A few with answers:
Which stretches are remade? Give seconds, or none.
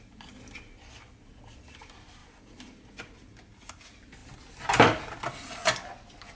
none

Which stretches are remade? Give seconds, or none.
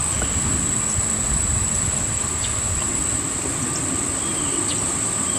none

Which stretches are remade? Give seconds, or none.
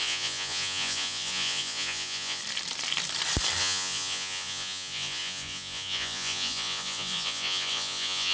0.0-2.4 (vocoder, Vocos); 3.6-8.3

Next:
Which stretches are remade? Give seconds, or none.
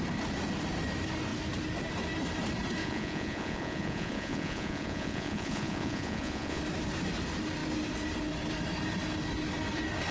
2.8-6.6 (vocoder, Vocos)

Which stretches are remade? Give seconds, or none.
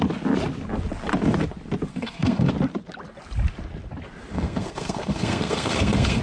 1.9-2.5 (codec, SNAC); 4.3-6.2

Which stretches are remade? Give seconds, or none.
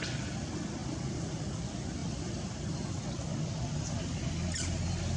0.8-1.6 (vocoder, BigVGAN v2); 2.0-4.2